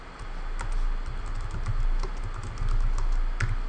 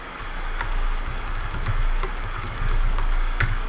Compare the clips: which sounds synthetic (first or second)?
second